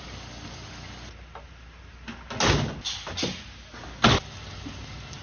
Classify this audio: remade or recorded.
recorded